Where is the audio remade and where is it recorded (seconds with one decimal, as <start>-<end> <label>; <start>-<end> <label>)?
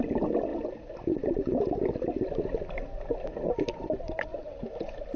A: 0.0-0.5 remade; 0.5-3.6 recorded; 3.6-5.2 remade